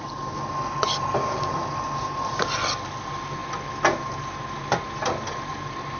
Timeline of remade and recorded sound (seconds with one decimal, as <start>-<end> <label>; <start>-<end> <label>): 0.0-6.0 recorded